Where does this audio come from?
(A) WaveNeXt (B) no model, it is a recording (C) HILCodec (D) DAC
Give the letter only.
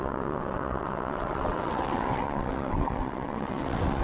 A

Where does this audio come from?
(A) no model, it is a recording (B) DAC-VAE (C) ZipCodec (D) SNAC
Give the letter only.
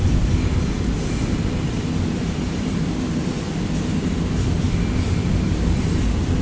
A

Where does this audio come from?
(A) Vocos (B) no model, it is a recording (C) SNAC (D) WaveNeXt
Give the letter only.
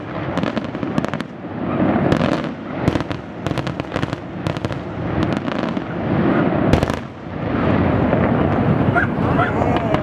B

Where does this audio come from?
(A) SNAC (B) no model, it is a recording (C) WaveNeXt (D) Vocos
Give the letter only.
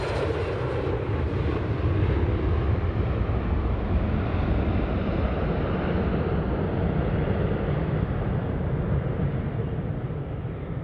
B